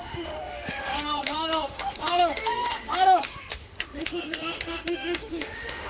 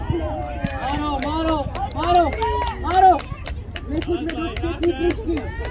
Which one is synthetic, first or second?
first